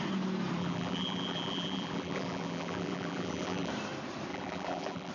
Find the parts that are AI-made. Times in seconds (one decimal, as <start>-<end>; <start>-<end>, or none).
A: 0.6-3.7; 4.3-5.1